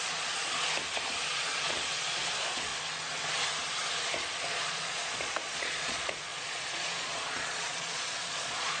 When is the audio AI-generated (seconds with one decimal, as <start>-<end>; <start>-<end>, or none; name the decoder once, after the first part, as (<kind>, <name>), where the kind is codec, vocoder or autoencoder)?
0.0-0.7 (vocoder, Vocos); 1.3-2.7; 4.4-8.8